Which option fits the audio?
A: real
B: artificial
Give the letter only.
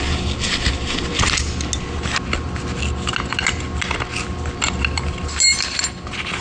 A